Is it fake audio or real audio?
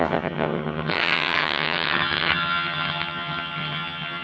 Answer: fake